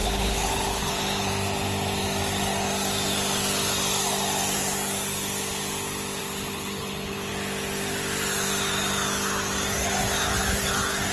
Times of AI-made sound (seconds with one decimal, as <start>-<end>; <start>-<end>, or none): 0.0-0.9; 6.2-7.3